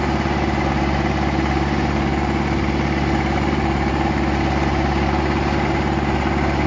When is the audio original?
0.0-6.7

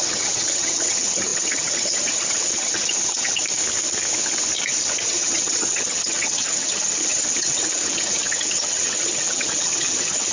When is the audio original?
3.4-4.9

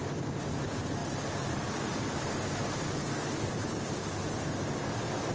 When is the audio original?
0.0-5.3